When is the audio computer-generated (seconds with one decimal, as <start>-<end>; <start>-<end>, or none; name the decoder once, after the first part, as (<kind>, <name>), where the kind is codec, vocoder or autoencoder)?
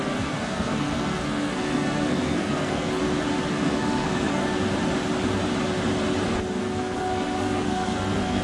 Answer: 0.0-3.0 (codec, SNAC); 3.5-4.4; 6.6-8.4